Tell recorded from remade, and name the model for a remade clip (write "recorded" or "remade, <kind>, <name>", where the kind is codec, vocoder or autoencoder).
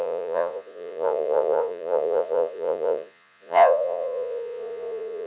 remade, vocoder, Vocos